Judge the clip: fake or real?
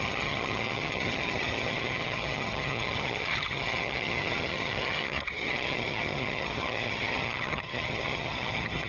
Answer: fake